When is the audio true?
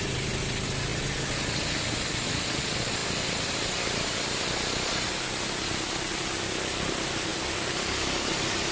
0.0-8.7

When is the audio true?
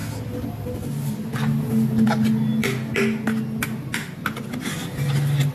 0.0-5.5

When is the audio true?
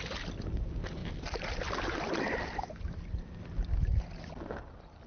0.0-5.1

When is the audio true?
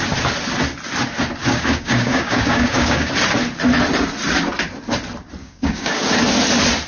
0.0-1.5; 3.1-5.4; 6.0-6.9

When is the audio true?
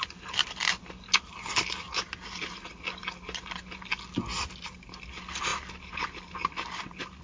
0.0-7.2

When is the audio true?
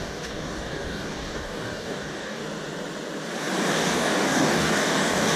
2.4-3.7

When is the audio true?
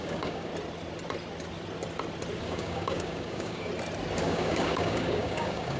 0.5-2.4; 3.7-4.2